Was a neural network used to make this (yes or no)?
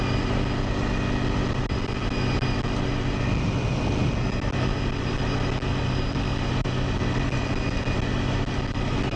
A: no